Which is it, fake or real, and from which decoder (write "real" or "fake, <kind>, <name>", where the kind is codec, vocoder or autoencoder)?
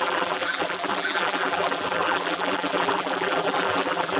fake, vocoder, BigVGAN v2